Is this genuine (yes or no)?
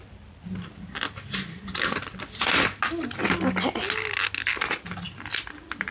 yes